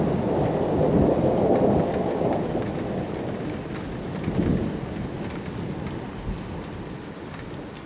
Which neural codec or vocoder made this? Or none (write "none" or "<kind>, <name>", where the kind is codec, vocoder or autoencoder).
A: none